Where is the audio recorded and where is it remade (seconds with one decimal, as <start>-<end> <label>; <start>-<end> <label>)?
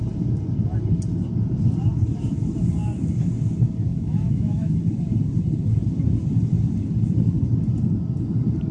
0.0-3.9 recorded; 3.9-4.8 remade; 4.8-8.7 recorded